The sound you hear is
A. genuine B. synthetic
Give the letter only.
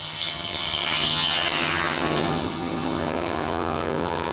B